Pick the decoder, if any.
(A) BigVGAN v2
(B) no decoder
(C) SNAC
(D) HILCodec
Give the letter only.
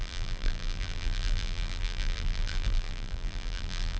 A